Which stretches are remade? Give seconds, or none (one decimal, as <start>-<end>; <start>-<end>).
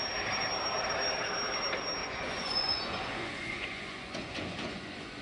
2.0-5.2